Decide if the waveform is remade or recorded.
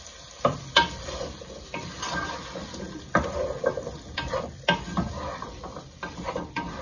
recorded